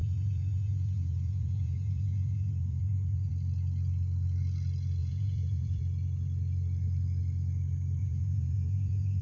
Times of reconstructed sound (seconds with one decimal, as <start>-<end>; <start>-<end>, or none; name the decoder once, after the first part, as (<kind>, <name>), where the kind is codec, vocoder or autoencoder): 0.0-3.3 (vocoder, Vocos); 5.0-5.8; 8.0-9.2

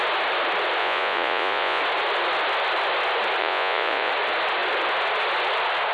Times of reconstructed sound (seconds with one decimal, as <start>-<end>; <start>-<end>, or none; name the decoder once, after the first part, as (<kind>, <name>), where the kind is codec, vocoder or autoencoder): 0.8-1.8 (vocoder, Vocos); 3.4-4.1

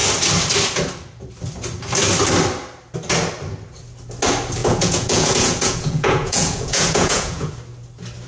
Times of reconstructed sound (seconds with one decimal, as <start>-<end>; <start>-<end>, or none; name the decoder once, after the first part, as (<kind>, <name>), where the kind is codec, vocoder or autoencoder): 4.6-7.5 (vocoder, Vocos)